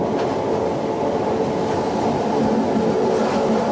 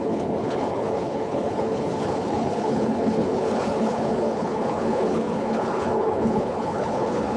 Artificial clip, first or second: second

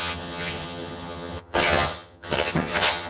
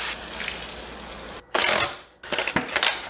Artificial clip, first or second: first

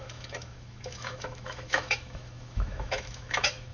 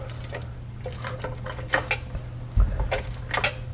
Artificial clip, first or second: first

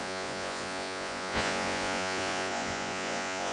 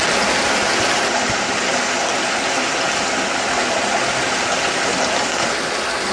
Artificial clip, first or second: first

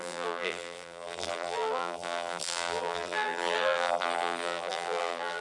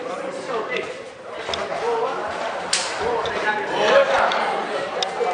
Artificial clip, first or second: first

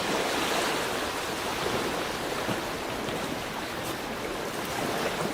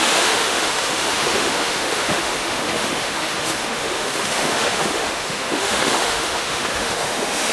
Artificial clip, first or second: second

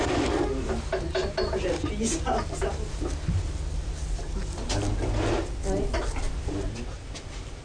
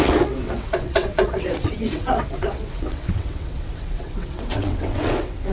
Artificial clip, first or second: second